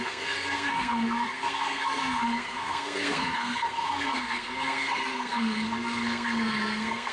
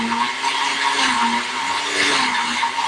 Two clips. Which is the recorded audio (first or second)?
second